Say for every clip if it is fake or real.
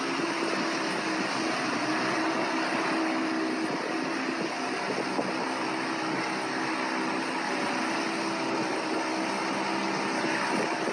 real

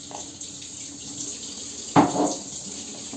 real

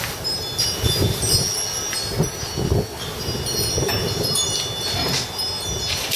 real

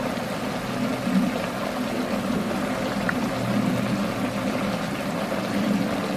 real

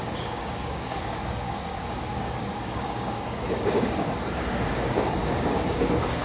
fake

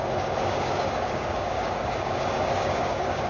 fake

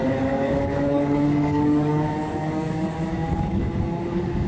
fake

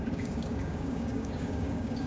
fake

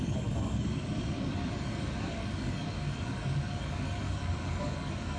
fake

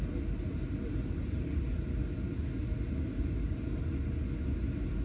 real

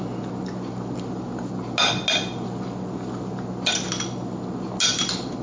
real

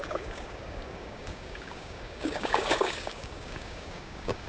fake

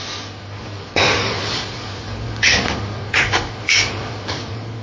fake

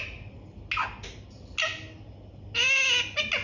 real